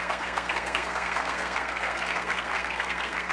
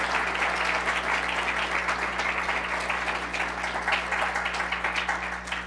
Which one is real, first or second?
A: second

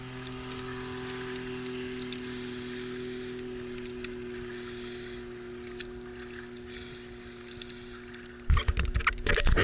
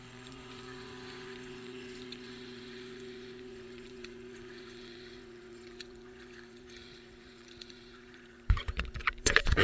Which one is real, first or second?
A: first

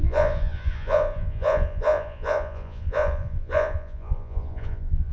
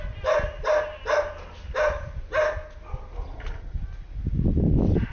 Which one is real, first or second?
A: second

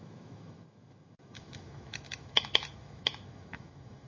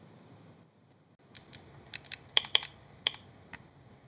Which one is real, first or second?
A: second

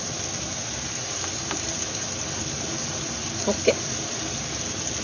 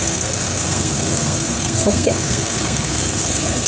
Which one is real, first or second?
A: first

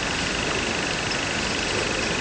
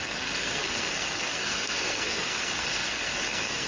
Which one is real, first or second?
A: first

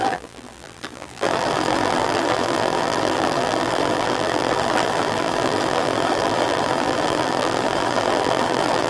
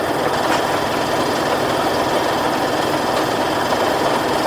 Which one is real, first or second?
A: second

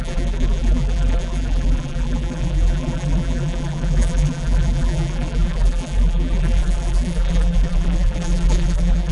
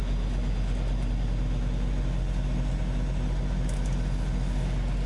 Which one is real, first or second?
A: second